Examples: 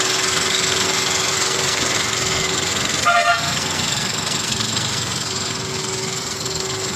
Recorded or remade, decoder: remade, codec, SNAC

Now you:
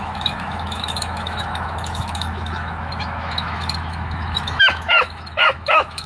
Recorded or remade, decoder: remade, autoencoder, DAC-VAE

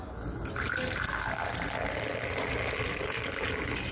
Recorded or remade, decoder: recorded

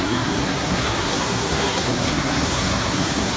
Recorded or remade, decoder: remade, codec, SNAC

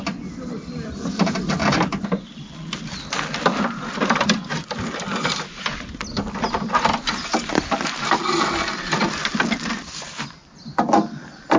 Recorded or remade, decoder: recorded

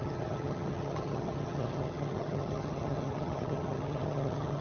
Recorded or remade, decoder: remade, vocoder, HiFi-GAN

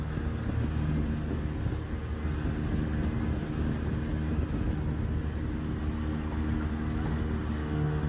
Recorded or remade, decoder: recorded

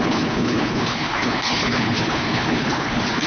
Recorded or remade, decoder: remade, codec, HILCodec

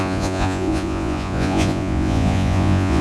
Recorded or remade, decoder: remade, vocoder, Vocos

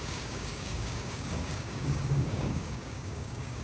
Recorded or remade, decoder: remade, codec, DAC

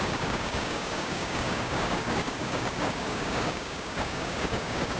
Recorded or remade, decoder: remade, codec, DAC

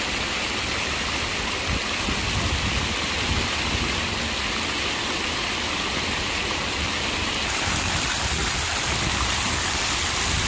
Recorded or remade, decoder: recorded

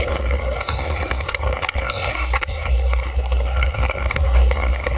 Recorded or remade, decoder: remade, codec, SNAC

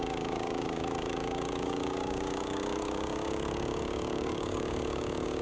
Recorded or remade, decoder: remade, codec, DAC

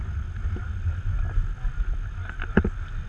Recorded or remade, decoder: recorded